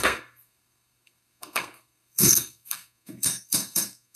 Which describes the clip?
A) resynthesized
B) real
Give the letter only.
A